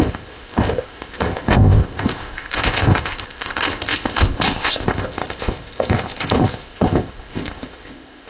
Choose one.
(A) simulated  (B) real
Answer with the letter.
A